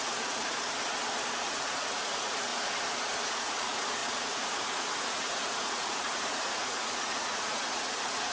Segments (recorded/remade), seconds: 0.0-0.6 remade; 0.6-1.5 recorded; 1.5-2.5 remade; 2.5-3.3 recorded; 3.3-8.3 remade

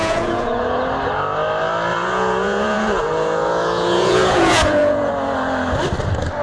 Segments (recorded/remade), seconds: 0.0-0.8 remade; 0.8-1.9 recorded; 1.9-5.1 remade; 5.1-6.4 recorded

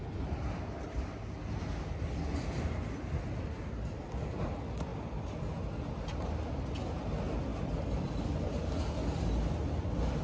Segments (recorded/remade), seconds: 0.0-10.2 recorded

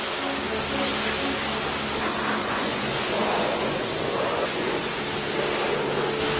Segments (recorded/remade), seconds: 0.0-2.4 recorded; 2.4-5.0 remade; 5.0-6.4 recorded

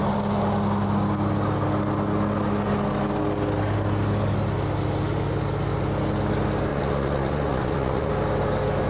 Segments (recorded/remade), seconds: 0.0-6.7 recorded; 6.7-8.1 remade; 8.1-8.9 recorded

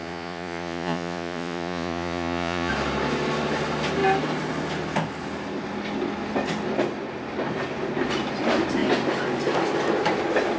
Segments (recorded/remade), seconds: 0.0-2.7 remade; 2.7-10.6 recorded